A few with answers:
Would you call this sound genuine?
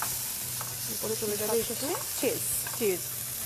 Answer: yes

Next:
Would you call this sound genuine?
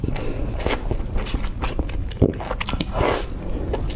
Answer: yes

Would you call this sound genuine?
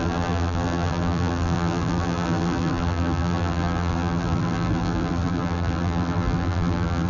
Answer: no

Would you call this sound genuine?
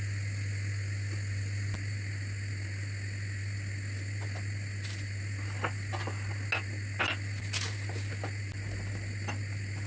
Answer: yes